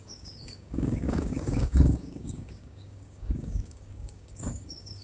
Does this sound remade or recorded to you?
remade